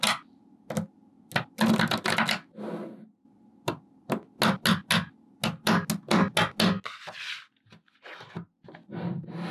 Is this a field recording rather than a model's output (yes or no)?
yes